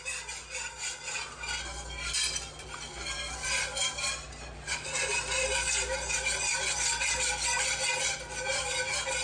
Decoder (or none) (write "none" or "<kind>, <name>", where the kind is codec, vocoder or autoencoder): none